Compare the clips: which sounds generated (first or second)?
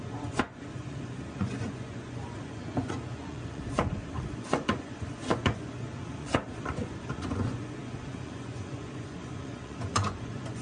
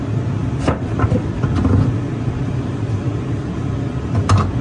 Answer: first